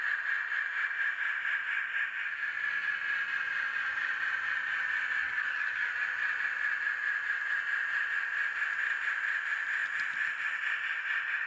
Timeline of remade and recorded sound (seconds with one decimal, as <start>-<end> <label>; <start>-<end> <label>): 0.0-5.2 recorded; 5.2-5.9 remade; 5.9-11.5 recorded